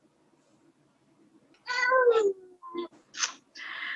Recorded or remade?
recorded